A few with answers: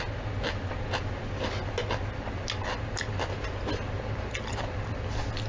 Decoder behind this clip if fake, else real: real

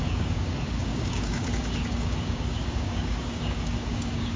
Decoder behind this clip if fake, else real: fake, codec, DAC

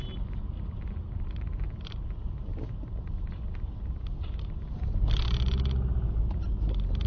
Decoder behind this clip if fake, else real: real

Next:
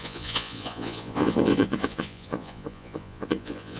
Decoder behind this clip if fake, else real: fake, vocoder, Vocos